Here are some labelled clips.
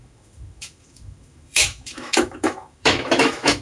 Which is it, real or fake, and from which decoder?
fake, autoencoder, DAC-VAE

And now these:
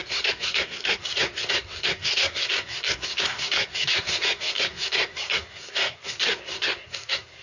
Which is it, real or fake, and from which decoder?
fake, codec, SNAC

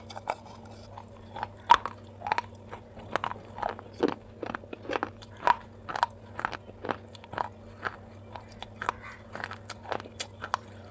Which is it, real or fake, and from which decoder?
real